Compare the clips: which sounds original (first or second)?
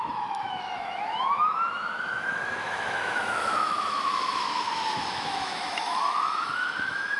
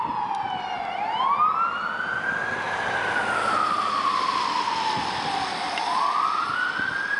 second